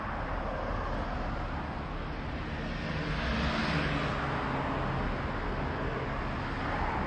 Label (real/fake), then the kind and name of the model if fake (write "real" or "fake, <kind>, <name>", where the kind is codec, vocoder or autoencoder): real